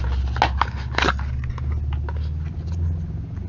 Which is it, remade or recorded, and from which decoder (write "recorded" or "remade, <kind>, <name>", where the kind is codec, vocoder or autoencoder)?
recorded